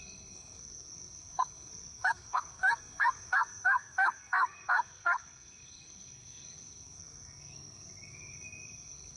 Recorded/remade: remade